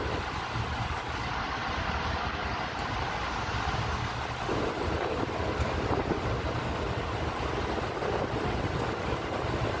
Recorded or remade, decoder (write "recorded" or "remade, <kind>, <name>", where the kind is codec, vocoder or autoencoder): recorded